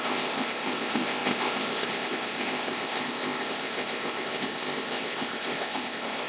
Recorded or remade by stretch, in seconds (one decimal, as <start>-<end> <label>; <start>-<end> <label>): 0.0-6.3 remade